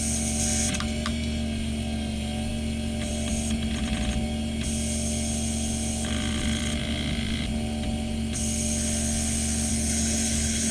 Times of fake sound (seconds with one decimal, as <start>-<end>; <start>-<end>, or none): 9.7-10.7